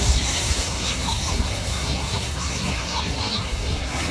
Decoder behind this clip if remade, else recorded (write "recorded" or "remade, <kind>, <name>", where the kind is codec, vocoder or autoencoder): remade, codec, SNAC